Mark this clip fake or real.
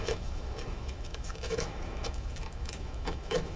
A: fake